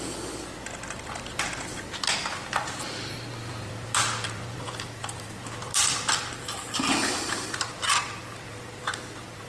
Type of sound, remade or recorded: recorded